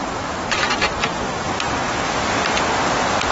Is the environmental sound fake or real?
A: real